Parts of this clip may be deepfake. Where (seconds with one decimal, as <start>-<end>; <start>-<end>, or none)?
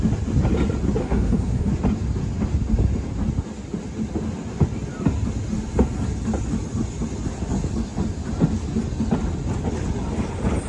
1.0-1.7